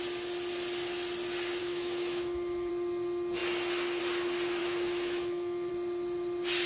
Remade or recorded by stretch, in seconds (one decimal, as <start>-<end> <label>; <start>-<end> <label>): 0.0-1.6 recorded; 1.6-2.7 remade; 2.7-4.6 recorded; 4.6-5.7 remade; 5.7-6.7 recorded